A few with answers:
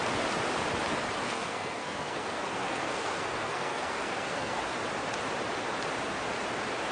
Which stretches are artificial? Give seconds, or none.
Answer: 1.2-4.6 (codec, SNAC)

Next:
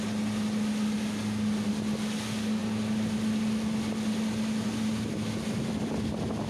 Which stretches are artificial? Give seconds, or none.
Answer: none